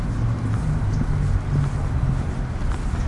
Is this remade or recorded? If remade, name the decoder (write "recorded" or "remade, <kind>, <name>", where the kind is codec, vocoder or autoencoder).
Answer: recorded